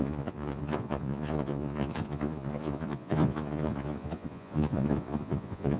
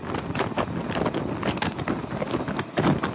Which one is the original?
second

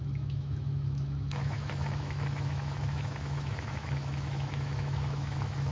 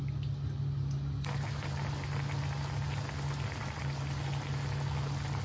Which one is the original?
second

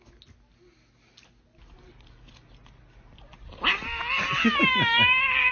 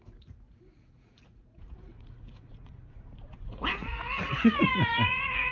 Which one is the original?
first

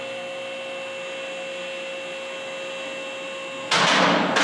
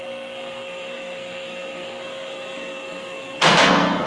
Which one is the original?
first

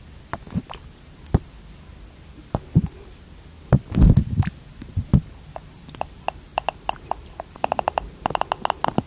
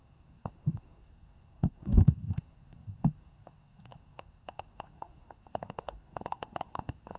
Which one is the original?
first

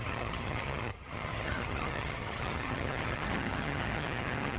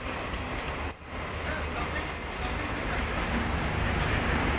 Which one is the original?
second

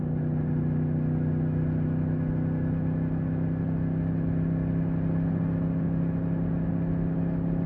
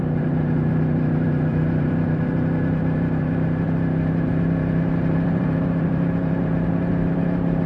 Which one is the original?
first